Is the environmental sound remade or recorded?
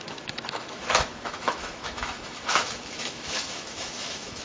remade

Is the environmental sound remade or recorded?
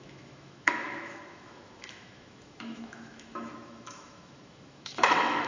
remade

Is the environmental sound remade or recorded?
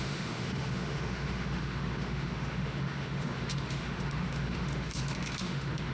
remade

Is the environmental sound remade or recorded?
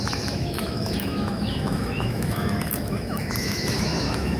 remade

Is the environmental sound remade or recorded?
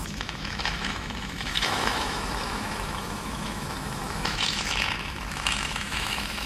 remade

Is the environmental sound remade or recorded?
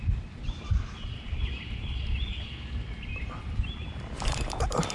recorded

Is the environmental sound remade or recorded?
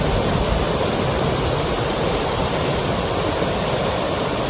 recorded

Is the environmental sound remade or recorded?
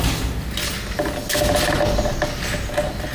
recorded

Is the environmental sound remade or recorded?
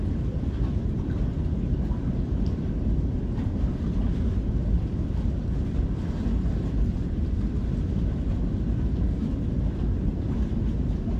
recorded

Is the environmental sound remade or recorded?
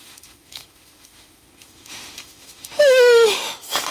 remade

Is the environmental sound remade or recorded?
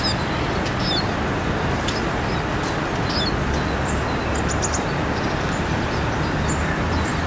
recorded